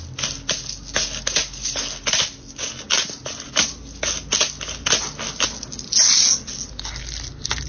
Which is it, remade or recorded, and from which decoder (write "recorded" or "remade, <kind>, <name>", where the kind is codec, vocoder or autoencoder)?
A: recorded